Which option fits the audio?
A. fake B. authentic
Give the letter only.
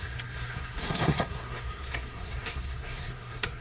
A